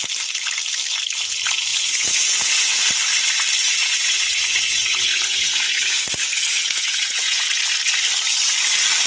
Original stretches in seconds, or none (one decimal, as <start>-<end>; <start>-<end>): 0.0-1.7; 2.9-3.8; 7.6-9.1